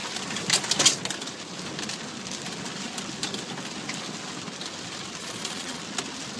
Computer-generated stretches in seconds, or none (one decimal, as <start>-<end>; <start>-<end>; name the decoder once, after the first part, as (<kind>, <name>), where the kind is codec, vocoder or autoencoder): 5.2-5.8 (vocoder, Vocos)